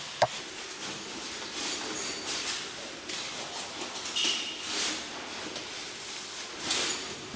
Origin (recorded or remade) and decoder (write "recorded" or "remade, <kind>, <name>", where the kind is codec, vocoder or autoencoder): recorded